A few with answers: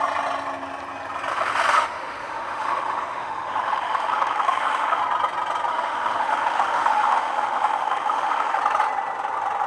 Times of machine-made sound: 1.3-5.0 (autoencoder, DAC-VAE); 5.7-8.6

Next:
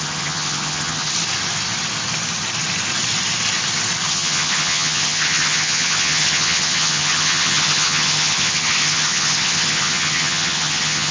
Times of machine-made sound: 0.0-1.1 (vocoder, HiFi-GAN); 4.1-11.1